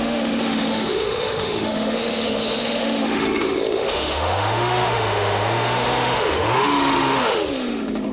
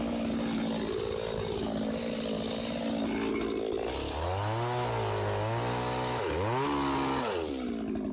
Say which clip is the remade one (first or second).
first